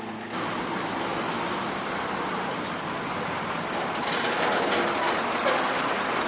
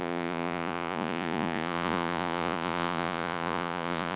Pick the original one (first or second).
first